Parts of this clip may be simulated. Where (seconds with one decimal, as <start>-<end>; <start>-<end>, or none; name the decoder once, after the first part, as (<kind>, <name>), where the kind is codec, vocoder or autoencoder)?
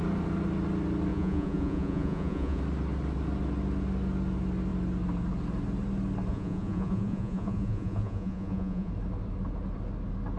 1.1-2.6 (vocoder, Vocos); 6.3-8.9